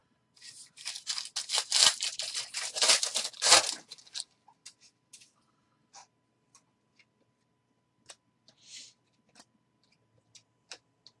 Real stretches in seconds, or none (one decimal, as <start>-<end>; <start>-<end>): 0.0-1.8; 2.9-11.2